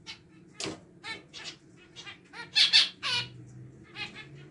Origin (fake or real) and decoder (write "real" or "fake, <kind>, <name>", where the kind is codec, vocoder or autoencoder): real